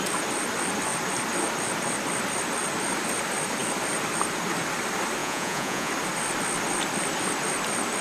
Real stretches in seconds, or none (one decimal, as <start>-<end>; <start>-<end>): 0.0-5.2; 5.9-8.0